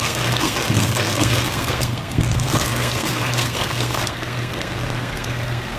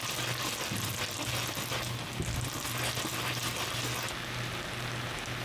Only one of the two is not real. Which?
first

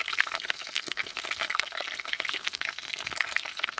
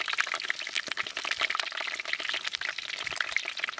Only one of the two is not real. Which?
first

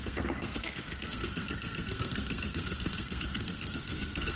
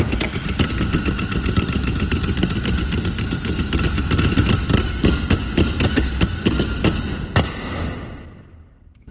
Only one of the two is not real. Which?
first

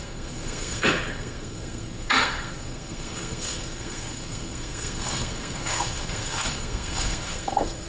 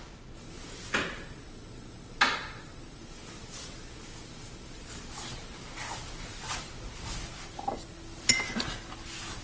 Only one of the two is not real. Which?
first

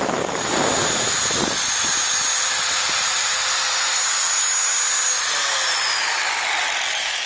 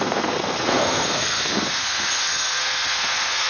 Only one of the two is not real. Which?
second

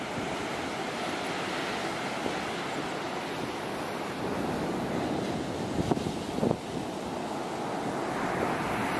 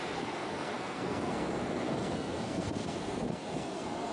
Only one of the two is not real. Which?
second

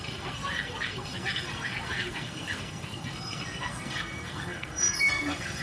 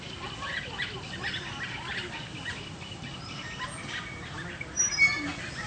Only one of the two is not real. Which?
first